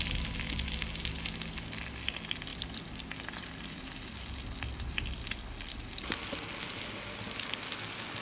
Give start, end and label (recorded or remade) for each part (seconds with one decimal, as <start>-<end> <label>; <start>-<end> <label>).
0.0-8.2 recorded